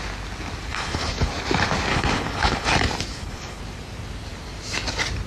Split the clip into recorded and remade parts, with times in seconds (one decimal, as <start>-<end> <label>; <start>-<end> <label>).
0.0-0.7 recorded; 0.7-1.3 remade; 1.3-1.9 recorded; 1.9-2.7 remade; 2.7-3.1 recorded; 3.1-3.6 remade; 3.6-5.3 recorded